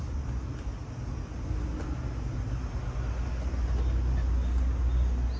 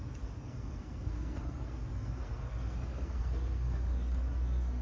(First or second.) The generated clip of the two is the second